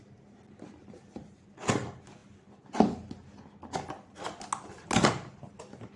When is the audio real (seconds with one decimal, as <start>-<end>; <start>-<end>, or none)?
0.0-6.0